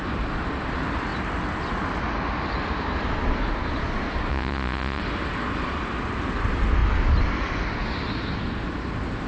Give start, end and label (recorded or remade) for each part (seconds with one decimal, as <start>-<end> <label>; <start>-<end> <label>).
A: 0.0-4.3 recorded; 4.3-5.0 remade; 5.0-9.3 recorded